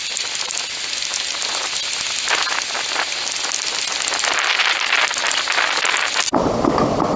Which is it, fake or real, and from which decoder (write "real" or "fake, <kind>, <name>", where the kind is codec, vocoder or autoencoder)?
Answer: real